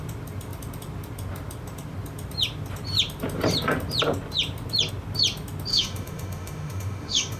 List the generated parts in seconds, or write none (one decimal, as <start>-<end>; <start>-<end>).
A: 5.7-7.4